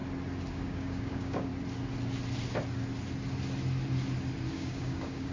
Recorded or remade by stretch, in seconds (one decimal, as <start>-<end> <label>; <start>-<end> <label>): 0.0-0.5 recorded; 0.5-1.5 remade; 1.5-4.5 recorded; 4.5-5.3 remade